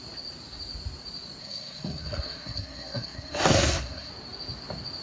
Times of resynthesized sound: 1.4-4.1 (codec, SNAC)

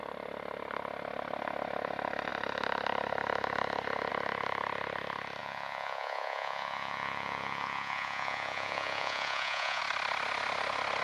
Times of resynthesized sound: 5.4-9.8 (vocoder, Vocos)

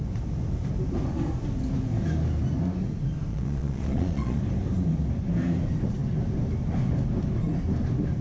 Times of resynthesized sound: 3.3-4.4 (vocoder, Vocos)